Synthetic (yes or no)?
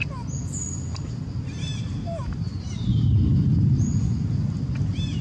no